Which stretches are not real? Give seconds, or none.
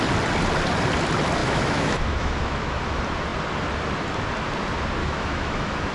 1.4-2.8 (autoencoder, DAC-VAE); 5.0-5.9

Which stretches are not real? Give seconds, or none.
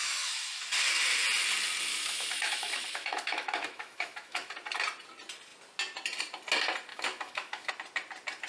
0.0-0.6 (autoencoder, DAC-VAE); 1.9-4.5; 6.9-7.7